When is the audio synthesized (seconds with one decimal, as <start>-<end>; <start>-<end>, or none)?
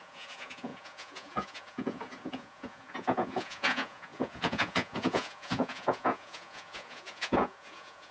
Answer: 0.0-8.1